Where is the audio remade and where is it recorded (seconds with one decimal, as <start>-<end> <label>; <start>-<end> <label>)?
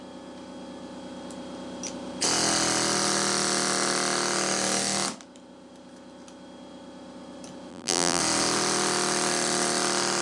0.0-7.7 recorded; 7.7-8.2 remade; 8.2-10.2 recorded